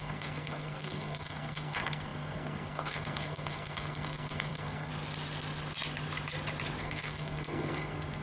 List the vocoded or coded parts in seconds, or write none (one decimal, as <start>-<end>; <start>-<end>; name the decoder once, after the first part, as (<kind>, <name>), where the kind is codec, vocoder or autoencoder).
0.0-4.9 (codec, SNAC); 6.8-8.2